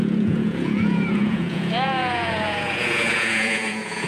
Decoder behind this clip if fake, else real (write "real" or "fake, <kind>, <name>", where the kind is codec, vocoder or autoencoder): fake, vocoder, Vocos